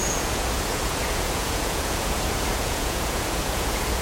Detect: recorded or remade remade